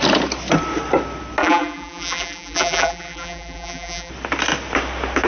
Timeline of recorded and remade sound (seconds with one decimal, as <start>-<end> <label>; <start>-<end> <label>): 0.0-1.4 recorded; 1.4-4.1 remade; 4.1-5.3 recorded